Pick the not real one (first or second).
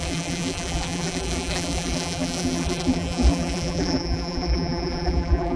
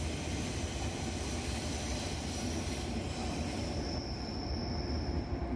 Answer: first